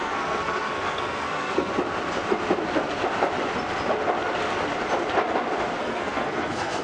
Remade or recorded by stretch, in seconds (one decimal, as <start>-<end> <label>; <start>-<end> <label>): 0.0-1.7 remade; 1.7-5.8 recorded; 5.8-6.8 remade